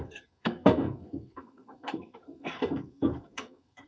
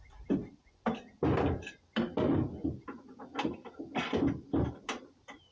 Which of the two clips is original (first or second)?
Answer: second